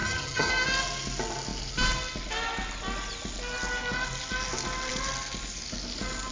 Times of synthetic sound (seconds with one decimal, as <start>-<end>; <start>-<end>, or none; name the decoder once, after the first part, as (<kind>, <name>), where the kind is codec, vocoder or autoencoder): 0.0-0.5 (vocoder, HiFi-GAN)